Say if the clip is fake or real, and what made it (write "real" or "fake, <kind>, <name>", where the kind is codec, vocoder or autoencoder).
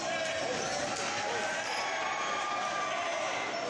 real